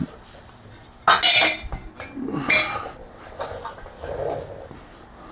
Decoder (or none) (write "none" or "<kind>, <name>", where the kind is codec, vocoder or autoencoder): none